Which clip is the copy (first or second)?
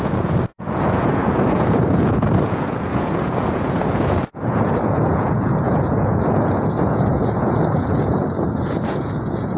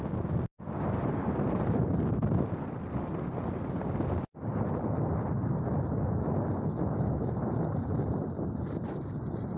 first